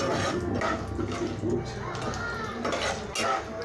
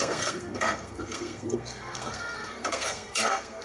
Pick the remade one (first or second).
second